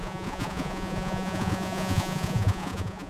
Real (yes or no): no